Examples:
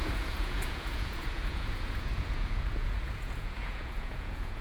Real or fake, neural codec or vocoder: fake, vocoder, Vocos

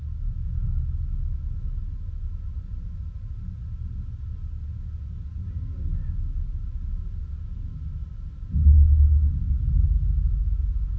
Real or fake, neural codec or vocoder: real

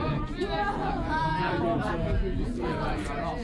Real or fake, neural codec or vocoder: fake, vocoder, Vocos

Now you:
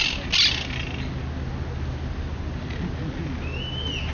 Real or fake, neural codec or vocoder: real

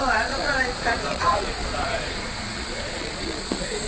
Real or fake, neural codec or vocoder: fake, vocoder, Vocos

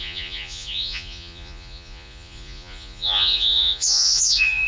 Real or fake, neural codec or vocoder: fake, vocoder, Vocos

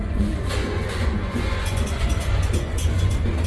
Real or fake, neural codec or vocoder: fake, vocoder, Vocos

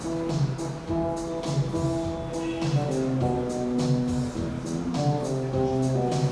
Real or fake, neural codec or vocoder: real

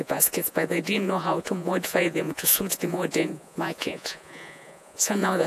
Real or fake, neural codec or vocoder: fake, vocoder, Vocos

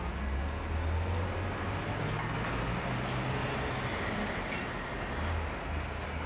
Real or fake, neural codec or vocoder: real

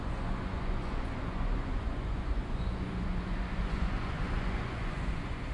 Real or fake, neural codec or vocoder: fake, vocoder, Vocos